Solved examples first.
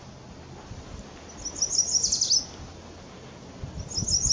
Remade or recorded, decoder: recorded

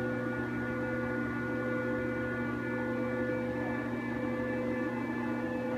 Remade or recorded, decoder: recorded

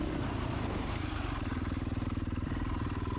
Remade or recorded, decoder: remade, vocoder, BigVGAN v2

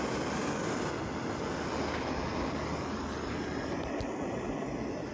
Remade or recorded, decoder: recorded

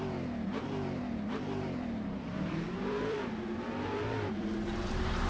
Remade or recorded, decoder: remade, vocoder, BigVGAN v2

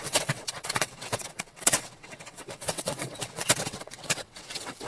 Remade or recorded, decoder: remade, vocoder, WaveNeXt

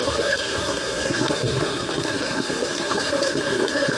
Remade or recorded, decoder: remade, codec, SNAC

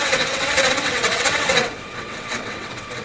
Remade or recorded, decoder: remade, vocoder, WaveNeXt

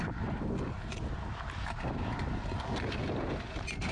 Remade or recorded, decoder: recorded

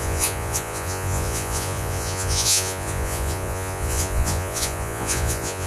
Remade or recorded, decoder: remade, vocoder, Vocos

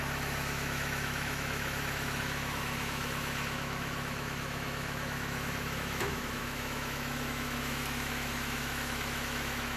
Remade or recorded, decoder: remade, autoencoder, DAC-VAE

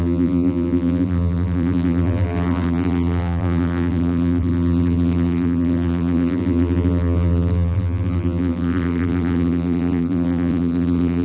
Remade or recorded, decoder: remade, vocoder, BigVGAN v2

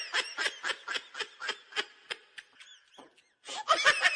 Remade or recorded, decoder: recorded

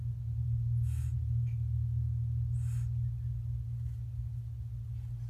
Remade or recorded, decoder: recorded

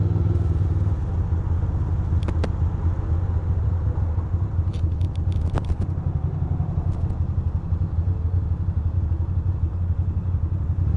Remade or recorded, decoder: recorded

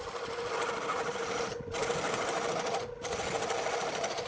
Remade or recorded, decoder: recorded